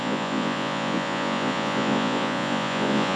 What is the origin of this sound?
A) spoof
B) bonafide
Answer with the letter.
A